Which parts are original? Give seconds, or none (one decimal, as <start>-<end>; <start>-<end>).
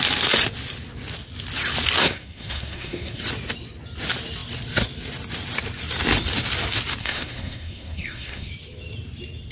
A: 0.0-2.0; 3.2-7.0; 8.5-9.5